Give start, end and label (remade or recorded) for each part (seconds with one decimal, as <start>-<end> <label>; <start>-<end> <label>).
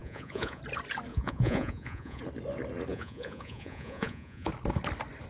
0.0-0.6 remade; 0.6-1.1 recorded; 1.1-2.2 remade; 2.2-2.9 recorded; 2.9-4.5 remade; 4.5-5.3 recorded